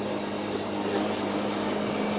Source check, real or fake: real